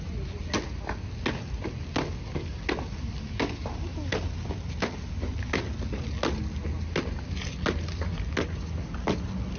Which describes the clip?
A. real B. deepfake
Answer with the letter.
A